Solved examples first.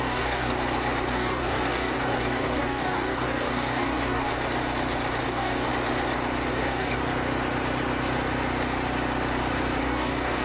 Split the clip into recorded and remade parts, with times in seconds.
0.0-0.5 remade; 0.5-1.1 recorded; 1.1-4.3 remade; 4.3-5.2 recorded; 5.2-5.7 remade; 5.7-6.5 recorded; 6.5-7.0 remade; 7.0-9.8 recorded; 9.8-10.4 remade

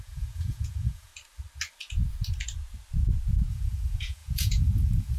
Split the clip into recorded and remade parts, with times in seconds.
0.0-1.1 remade; 1.1-3.5 recorded; 3.5-5.2 remade